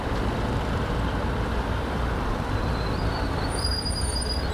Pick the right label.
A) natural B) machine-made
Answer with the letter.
B